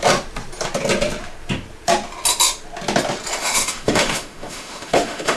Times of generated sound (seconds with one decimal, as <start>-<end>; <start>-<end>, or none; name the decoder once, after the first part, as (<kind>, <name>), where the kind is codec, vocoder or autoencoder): 3.4-5.4 (autoencoder, DAC-VAE)